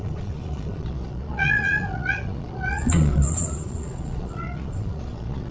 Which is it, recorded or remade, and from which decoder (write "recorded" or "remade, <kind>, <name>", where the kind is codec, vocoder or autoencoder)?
remade, vocoder, Vocos